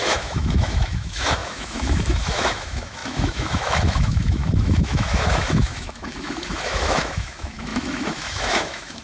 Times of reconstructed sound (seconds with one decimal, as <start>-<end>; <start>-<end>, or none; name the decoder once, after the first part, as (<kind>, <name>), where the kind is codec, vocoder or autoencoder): 0.0-9.0 (autoencoder, DAC-VAE)